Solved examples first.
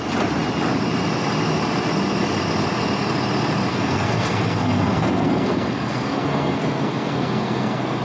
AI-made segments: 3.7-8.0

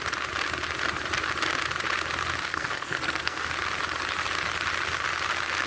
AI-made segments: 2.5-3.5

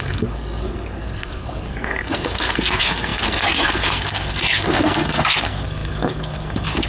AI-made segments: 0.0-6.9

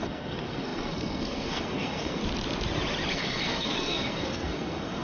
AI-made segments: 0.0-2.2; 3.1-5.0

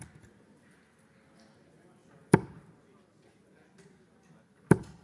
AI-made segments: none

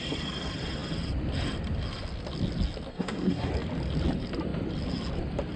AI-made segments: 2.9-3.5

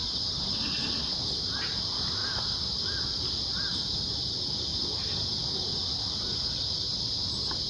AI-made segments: none